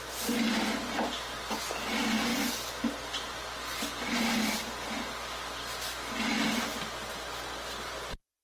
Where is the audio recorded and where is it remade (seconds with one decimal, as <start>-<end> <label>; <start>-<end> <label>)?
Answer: 0.0-8.4 recorded